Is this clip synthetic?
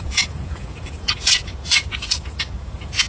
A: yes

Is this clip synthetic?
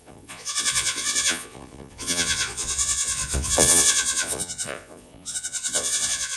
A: yes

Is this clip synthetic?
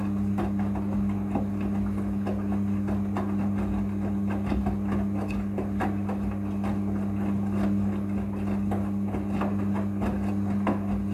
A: no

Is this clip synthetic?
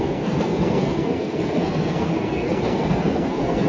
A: yes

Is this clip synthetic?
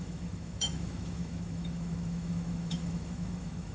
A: yes